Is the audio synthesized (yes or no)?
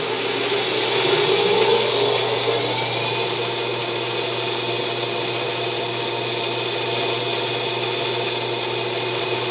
no